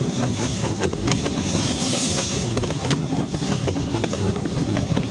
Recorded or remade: remade